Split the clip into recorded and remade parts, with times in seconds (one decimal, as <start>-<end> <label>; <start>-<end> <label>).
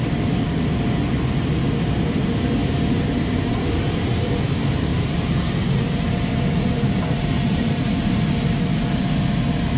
0.0-2.6 recorded; 2.6-4.4 remade; 4.4-4.9 recorded; 4.9-8.1 remade; 8.1-9.8 recorded